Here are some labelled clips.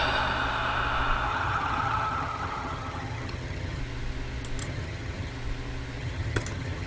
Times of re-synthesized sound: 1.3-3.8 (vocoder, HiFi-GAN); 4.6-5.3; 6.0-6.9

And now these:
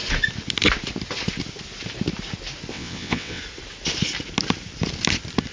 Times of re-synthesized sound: 2.7-3.4 (vocoder, WaveNeXt)

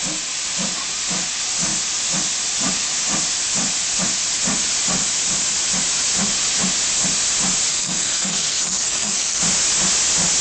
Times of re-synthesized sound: 7.7-9.4 (codec, SNAC)

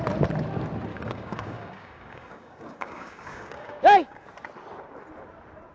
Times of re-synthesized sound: 0.9-4.3 (codec, DAC)

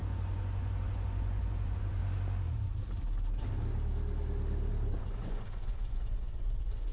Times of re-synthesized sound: 0.0-2.0 (vocoder, Vocos); 4.9-6.9

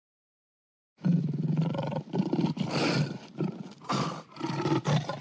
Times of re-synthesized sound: none

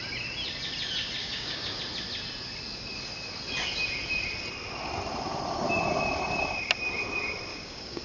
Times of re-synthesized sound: 1.2-1.8 (codec, DAC); 7.5-8.0